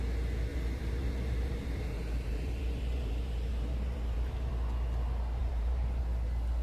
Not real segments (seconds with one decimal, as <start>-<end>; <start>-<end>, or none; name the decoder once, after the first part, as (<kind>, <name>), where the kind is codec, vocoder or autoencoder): 0.5-4.5 (vocoder, BigVGAN v2); 5.4-6.0